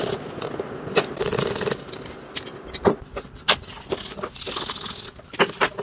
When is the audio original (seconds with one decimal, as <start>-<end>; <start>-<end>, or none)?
0.0-5.8